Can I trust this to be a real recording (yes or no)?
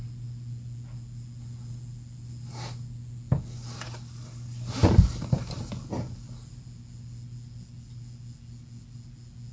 yes